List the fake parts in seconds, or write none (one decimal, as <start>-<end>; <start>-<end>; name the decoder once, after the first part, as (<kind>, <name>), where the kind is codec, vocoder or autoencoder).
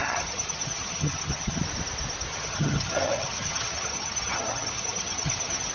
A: 0.0-1.6 (vocoder, HiFi-GAN); 2.3-5.7